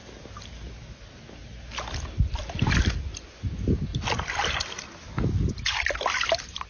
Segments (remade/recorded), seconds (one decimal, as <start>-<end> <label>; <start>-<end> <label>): 0.0-1.4 recorded; 1.4-2.8 remade; 2.8-3.9 recorded; 3.9-5.6 remade; 5.6-6.7 recorded